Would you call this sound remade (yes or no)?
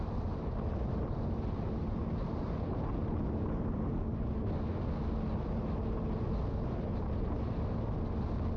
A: no